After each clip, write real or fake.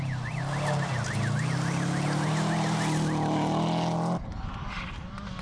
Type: real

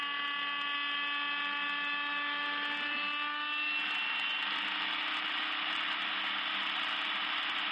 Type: real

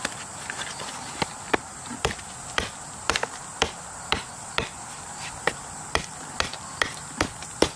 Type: fake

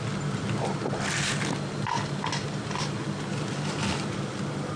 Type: real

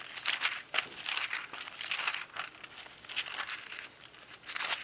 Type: real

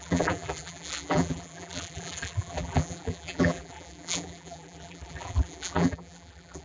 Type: fake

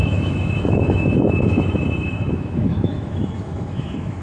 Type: fake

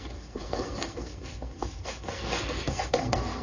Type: fake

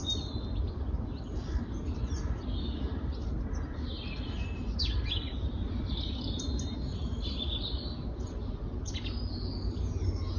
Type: real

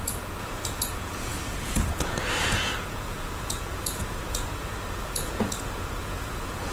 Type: fake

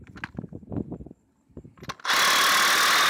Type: real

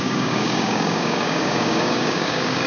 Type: fake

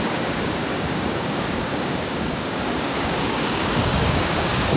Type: fake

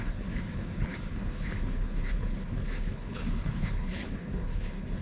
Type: fake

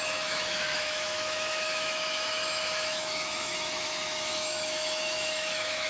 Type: fake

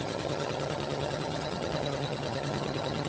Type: fake